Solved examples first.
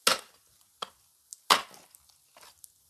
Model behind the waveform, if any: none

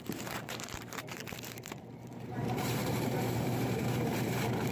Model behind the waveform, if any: vocoder, BigVGAN v2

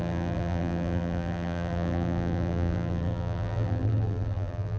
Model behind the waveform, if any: vocoder, BigVGAN v2